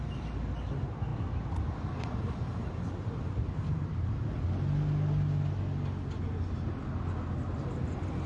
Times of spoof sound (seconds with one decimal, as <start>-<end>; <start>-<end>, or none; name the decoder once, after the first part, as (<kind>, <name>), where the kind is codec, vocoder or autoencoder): none